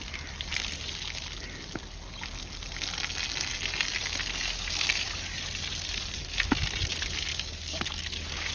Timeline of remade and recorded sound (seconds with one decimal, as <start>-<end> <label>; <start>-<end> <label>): 0.0-7.3 recorded; 7.3-8.5 remade